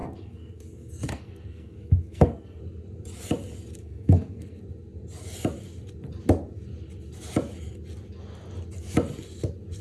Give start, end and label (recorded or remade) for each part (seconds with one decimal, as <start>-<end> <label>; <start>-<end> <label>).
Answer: 0.0-2.6 remade; 2.6-3.8 recorded; 3.8-4.6 remade; 4.6-9.8 recorded